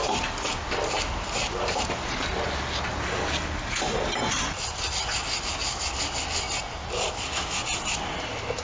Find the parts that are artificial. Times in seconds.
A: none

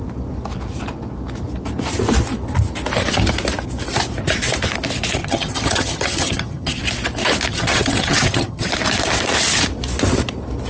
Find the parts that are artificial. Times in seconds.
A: 5.2-6.8 (vocoder, HiFi-GAN); 7.5-8.7

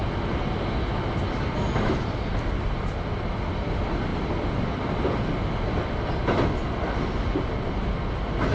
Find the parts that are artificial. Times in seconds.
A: none